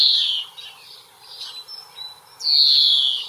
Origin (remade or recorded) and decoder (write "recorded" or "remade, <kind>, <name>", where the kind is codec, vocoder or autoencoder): recorded